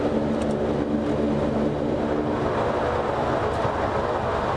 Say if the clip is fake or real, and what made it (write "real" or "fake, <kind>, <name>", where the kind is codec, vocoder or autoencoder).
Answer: real